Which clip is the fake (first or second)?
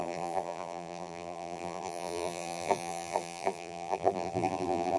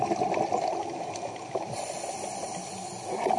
first